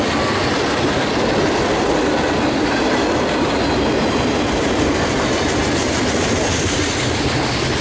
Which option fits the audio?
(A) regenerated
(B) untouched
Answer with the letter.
B